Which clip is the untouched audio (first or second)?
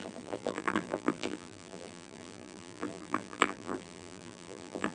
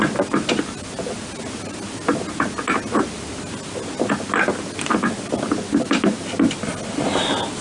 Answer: second